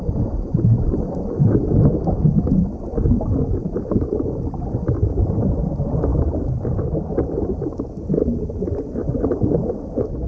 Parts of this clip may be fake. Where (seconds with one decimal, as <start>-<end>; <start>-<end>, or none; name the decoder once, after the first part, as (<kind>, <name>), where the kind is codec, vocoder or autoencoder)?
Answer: 3.6-4.8 (vocoder, BigVGAN v2)